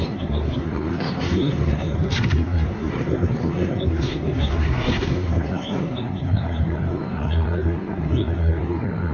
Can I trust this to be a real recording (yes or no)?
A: no